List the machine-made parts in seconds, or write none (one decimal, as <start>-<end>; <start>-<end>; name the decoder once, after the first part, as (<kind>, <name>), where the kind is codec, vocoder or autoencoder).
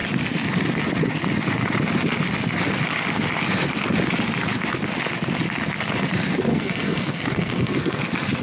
6.5-8.0 (codec, SNAC)